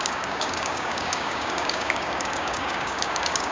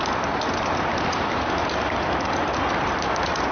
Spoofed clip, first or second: first